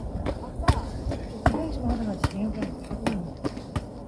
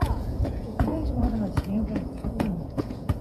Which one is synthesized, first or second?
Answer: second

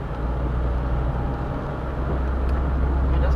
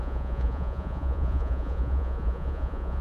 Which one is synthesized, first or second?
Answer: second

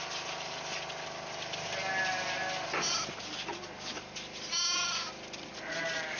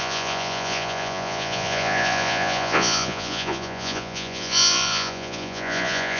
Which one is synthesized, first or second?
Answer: second